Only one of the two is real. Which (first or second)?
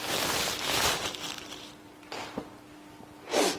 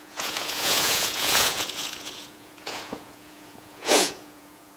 first